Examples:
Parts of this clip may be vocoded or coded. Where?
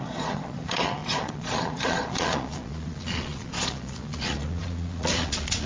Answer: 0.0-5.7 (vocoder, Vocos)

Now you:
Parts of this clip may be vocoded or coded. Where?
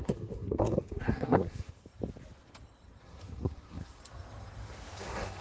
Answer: 0.0-1.8 (codec, SNAC); 3.0-4.0; 5.0-5.4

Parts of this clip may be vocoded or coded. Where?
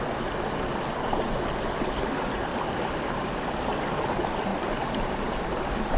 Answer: 2.5-3.5 (vocoder, BigVGAN v2)